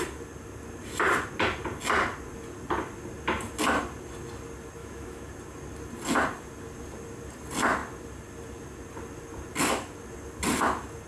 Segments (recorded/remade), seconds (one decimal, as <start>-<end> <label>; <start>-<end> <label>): 0.0-4.8 recorded; 4.8-5.3 remade; 5.3-11.1 recorded